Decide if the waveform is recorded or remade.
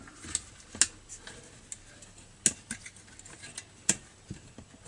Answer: recorded